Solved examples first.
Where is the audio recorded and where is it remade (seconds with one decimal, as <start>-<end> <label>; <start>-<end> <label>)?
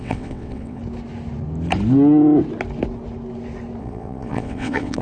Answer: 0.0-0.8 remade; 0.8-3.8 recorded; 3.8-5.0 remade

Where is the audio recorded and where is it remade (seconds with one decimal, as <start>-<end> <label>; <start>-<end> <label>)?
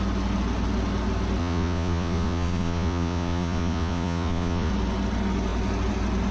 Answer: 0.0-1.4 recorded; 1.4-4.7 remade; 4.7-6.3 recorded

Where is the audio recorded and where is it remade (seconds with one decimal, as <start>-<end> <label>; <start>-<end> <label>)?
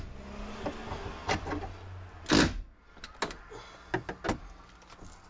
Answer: 0.0-5.3 recorded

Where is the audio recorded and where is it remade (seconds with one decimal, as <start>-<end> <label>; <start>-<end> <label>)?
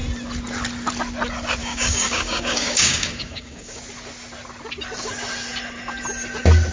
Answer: 0.0-1.6 recorded; 1.6-3.8 remade; 3.8-6.7 recorded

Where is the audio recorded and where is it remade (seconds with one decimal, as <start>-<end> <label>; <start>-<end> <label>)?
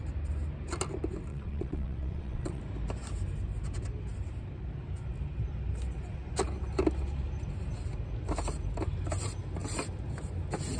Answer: 0.0-1.3 recorded; 1.3-2.6 remade; 2.6-10.8 recorded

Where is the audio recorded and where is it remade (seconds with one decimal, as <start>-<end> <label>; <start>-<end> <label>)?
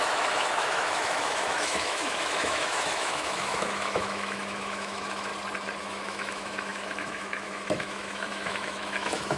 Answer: 0.0-5.3 remade; 5.3-5.8 recorded; 5.8-9.4 remade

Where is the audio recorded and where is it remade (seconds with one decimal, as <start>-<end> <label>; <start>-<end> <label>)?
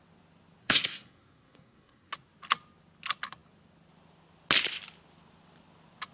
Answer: 0.0-0.6 recorded; 0.6-2.1 remade; 2.1-6.1 recorded